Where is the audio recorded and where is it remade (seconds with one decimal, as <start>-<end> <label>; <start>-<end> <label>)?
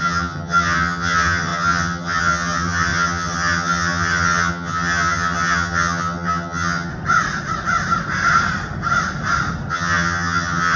0.0-6.9 remade; 6.9-9.7 recorded; 9.7-10.8 remade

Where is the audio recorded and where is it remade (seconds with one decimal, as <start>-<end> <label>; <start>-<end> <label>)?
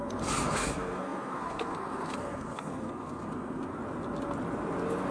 0.0-3.7 remade; 3.7-5.1 recorded